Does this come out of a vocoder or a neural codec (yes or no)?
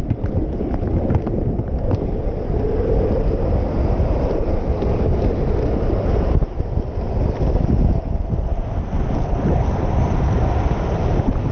no